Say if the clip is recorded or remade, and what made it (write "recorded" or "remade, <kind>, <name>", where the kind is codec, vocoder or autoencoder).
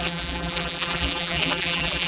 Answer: remade, vocoder, BigVGAN v2